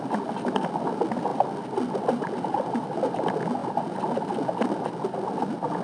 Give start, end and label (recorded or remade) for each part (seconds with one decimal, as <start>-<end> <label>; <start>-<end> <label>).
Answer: 0.0-5.8 recorded